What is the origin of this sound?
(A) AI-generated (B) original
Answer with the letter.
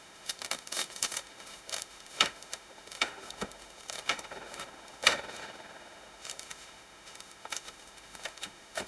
A